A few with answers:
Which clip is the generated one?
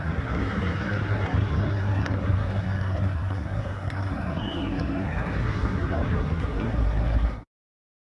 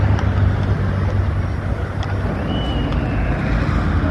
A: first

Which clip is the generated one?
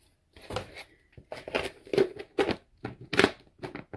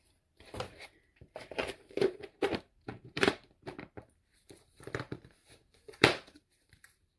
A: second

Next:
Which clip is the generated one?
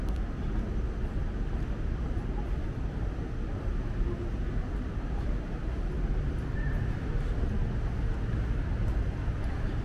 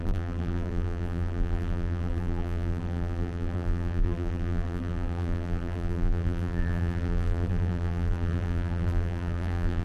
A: second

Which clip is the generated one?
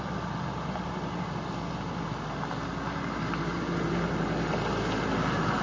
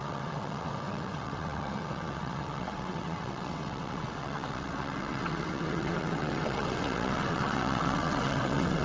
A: second